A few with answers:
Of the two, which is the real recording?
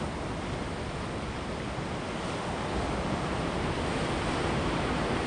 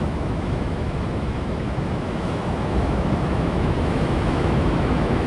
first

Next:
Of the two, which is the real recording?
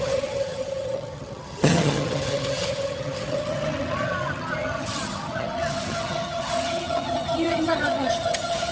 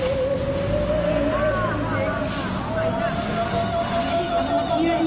second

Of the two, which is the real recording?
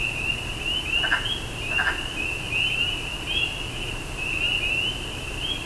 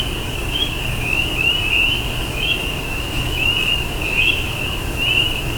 first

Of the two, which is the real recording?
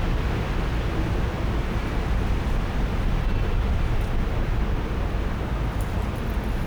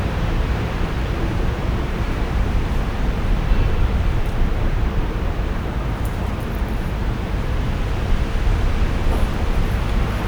first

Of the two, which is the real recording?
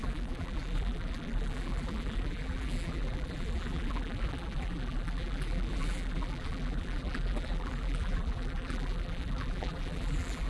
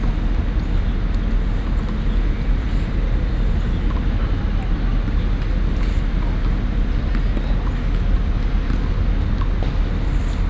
second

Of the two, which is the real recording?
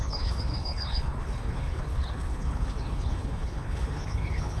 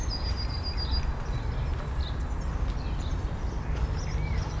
second